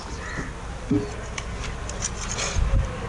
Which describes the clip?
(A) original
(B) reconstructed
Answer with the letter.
A